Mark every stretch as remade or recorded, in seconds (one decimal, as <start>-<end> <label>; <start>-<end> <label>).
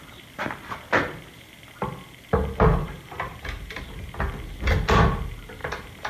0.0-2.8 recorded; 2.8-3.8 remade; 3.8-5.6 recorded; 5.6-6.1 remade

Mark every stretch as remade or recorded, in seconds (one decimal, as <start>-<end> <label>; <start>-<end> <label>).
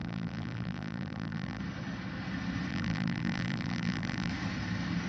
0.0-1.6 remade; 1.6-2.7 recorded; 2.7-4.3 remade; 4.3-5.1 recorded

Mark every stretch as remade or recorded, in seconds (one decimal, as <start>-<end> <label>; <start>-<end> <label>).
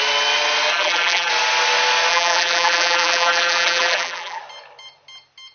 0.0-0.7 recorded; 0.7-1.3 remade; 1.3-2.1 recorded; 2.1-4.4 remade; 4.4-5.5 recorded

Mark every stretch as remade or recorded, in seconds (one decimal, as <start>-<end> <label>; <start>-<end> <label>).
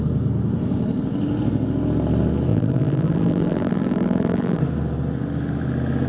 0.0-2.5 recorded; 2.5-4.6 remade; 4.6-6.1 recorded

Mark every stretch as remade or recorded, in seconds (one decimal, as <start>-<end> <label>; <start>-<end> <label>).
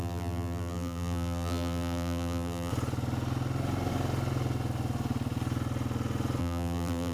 0.0-2.7 remade; 2.7-6.4 recorded; 6.4-7.1 remade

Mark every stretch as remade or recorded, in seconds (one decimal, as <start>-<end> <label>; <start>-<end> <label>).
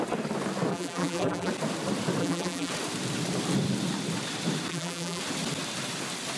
0.0-0.7 recorded; 0.7-1.5 remade; 1.5-2.2 recorded; 2.2-2.7 remade; 2.7-4.7 recorded; 4.7-5.2 remade; 5.2-6.4 recorded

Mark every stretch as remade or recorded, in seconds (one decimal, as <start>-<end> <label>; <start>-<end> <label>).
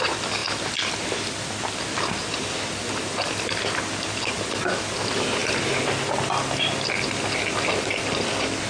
0.0-8.7 recorded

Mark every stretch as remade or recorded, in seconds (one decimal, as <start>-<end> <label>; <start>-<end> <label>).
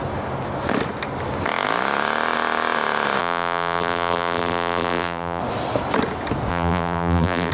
0.0-3.2 recorded; 3.2-5.4 remade; 5.4-6.5 recorded; 6.5-7.5 remade